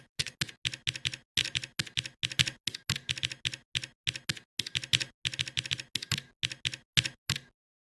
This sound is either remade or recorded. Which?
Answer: recorded